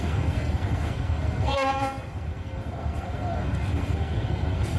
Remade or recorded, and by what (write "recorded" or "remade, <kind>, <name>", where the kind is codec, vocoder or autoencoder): remade, codec, SNAC